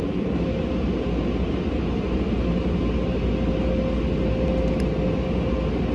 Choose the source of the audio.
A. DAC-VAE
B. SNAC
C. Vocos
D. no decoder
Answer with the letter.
D